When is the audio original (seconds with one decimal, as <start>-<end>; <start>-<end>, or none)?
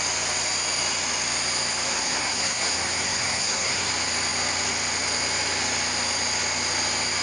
0.0-1.9; 3.9-7.2